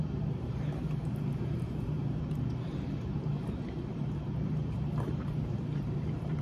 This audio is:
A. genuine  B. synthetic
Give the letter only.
B